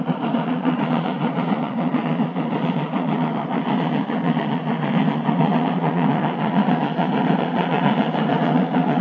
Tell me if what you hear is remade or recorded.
remade